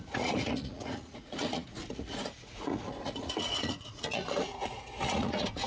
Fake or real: fake